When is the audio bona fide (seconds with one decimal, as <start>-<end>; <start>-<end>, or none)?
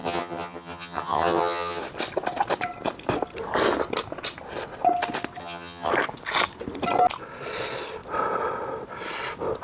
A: 1.8-5.4; 5.9-9.6